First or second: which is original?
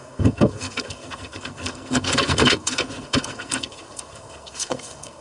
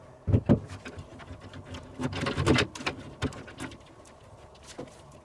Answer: second